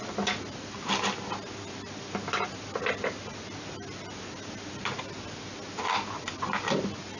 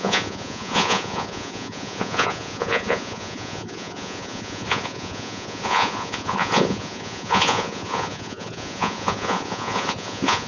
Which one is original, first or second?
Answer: first